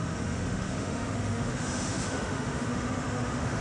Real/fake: fake